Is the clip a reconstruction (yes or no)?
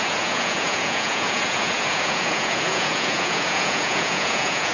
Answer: yes